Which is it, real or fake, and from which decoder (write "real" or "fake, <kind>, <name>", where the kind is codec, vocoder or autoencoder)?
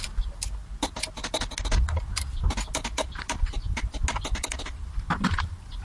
real